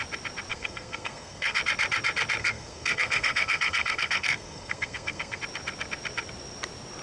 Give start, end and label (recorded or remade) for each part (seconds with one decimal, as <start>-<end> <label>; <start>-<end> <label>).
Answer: 0.0-0.5 recorded; 0.5-1.6 remade; 1.6-2.4 recorded; 2.4-5.4 remade; 5.4-7.0 recorded